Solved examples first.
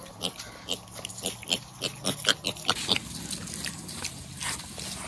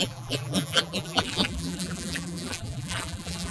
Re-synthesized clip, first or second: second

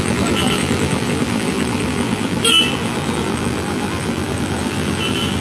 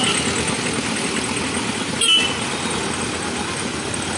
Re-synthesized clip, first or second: first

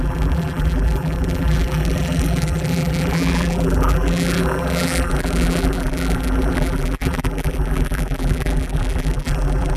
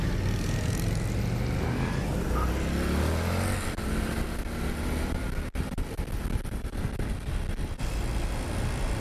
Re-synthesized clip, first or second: first